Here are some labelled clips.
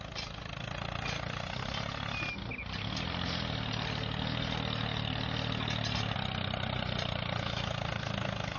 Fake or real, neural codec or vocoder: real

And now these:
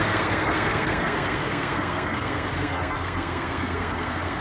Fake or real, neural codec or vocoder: fake, codec, SNAC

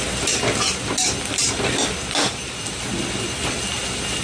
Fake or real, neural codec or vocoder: real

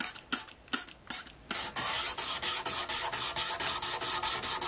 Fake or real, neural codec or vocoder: real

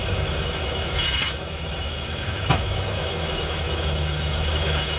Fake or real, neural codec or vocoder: fake, autoencoder, DAC-VAE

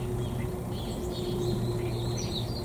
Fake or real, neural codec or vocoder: real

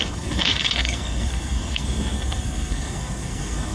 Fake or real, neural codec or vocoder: fake, codec, SNAC